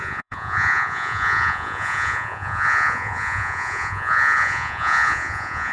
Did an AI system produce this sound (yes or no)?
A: yes